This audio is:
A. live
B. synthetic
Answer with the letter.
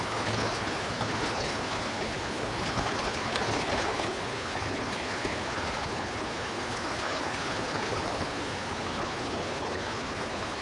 B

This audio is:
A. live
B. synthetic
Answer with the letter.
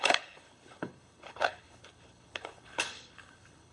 B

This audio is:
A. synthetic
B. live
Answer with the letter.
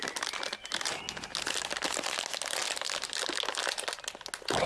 B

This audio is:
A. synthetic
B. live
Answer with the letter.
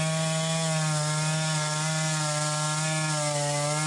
B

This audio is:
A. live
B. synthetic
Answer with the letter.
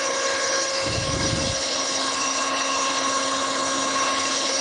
B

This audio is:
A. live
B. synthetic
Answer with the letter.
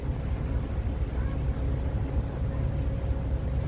A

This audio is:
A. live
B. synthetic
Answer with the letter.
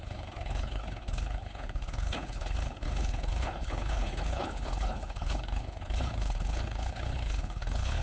B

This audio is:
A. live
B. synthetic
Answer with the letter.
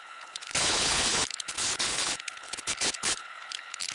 B